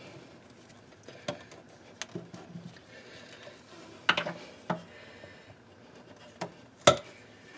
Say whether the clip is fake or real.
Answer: real